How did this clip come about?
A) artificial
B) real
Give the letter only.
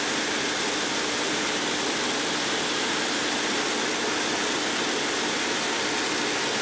B